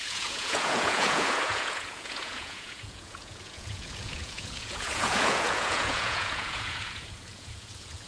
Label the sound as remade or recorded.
remade